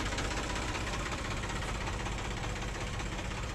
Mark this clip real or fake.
fake